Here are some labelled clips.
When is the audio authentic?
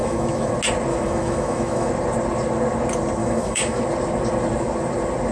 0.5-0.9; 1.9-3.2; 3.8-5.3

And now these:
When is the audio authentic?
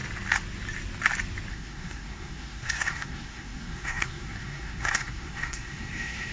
0.0-1.5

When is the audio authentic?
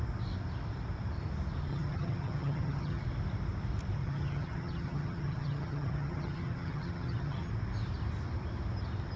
0.0-1.7; 3.0-4.0; 7.5-9.2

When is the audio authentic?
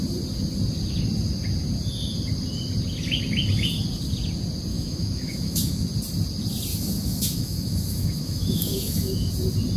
0.0-4.7; 5.8-6.7; 9.3-9.8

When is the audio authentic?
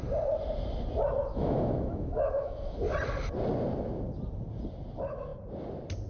0.0-1.3; 2.8-6.1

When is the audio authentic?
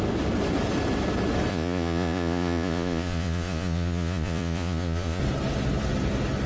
0.0-1.5; 5.2-6.5